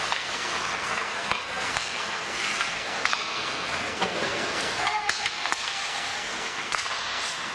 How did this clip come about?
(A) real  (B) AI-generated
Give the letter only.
B